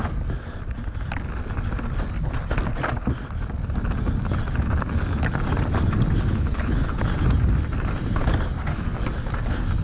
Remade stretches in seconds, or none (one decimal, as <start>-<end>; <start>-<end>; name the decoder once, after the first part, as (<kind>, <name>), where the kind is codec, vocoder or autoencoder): 6.3-7.0 (codec, HILCodec)